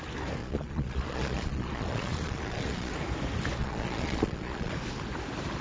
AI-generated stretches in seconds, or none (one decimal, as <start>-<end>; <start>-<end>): 0.4-2.9; 3.6-4.7